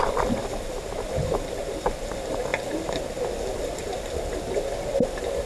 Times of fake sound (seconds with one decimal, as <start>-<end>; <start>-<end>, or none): none